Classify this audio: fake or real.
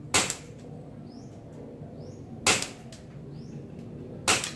real